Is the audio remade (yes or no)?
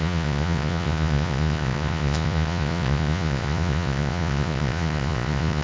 yes